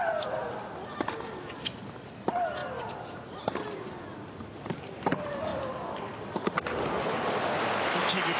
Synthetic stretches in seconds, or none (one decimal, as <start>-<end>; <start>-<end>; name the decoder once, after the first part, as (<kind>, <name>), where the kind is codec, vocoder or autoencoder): none